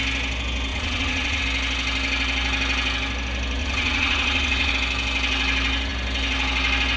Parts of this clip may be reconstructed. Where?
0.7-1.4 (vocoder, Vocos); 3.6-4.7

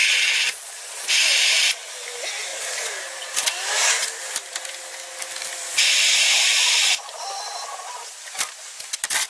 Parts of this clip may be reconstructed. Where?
0.0-1.1 (vocoder, Vocos)